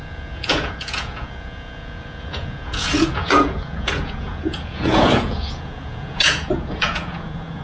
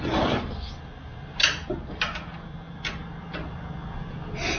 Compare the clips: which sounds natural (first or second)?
second